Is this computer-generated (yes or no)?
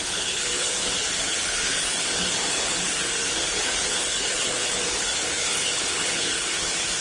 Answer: yes